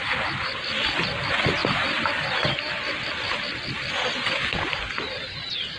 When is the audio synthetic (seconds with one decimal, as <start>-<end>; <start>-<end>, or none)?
none